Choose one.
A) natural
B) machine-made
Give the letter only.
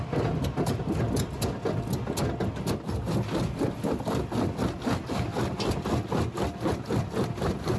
A